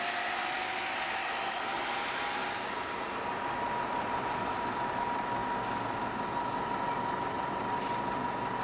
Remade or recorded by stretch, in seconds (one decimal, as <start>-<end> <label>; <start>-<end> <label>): 0.0-8.6 recorded